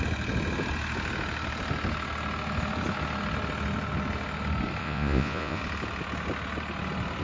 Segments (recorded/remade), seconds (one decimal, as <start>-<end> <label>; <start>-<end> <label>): 0.0-4.8 recorded; 4.8-5.6 remade; 5.6-7.2 recorded